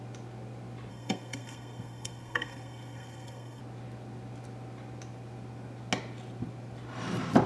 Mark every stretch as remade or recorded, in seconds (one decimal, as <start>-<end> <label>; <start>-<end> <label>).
0.0-0.9 recorded; 0.9-3.6 remade; 3.6-7.5 recorded